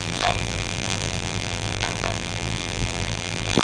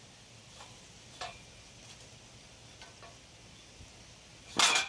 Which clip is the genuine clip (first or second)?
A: second